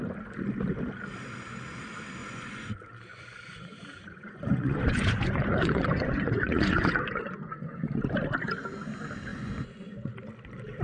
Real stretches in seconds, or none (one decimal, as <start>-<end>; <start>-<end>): 0.0-2.2; 2.7-3.1; 8.0-9.3; 10.1-10.8